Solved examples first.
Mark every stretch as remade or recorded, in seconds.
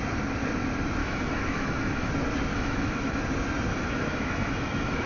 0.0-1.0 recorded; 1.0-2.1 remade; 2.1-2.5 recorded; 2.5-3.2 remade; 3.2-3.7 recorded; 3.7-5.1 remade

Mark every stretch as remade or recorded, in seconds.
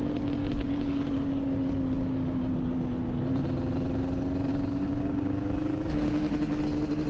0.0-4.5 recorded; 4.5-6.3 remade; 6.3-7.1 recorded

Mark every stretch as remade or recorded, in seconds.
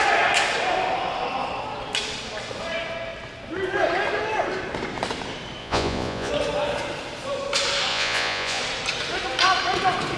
0.0-5.6 recorded; 5.6-6.3 remade; 6.3-7.9 recorded; 7.9-8.6 remade; 8.6-10.2 recorded